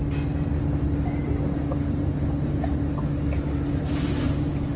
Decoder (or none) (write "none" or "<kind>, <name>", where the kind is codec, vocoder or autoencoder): none